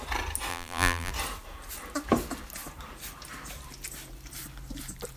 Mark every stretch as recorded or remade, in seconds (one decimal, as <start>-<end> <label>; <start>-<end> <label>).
0.0-0.5 recorded; 0.5-1.1 remade; 1.1-5.2 recorded